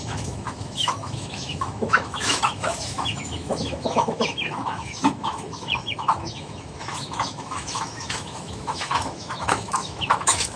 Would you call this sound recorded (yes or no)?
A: no